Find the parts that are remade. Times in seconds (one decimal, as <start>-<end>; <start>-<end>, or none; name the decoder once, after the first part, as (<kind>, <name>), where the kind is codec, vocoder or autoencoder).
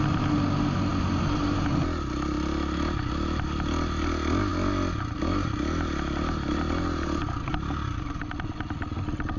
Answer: none